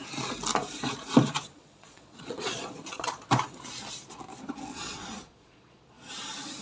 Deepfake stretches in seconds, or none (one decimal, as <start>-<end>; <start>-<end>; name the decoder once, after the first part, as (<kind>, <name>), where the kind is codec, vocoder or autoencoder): 1.6-3.2 (vocoder, Vocos); 4.7-6.1